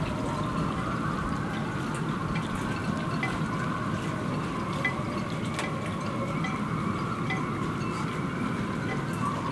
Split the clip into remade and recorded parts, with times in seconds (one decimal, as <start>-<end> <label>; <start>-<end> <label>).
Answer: 0.0-9.5 recorded